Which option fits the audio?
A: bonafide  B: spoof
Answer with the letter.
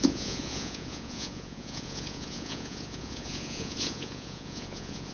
B